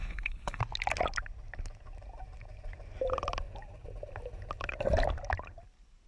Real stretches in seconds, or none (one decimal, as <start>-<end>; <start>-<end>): 0.6-6.1